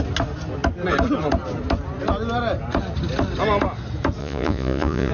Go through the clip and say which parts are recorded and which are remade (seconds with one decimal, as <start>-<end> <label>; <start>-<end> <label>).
0.0-4.2 recorded; 4.2-5.1 remade